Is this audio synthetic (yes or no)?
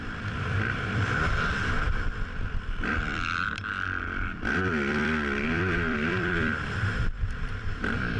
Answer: yes